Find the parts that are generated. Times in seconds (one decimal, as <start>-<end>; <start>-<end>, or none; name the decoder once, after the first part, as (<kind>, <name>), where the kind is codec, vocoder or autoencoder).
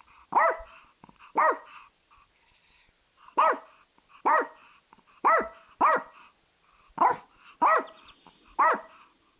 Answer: none